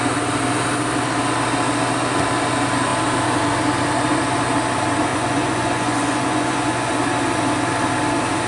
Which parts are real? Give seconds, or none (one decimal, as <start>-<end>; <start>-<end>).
0.0-5.1; 6.9-8.5